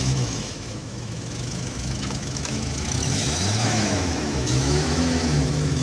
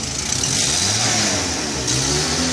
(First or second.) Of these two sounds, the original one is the second